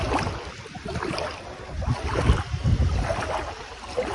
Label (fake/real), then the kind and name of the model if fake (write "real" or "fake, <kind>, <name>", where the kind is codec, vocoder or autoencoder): real